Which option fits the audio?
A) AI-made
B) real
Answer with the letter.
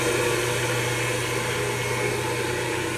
B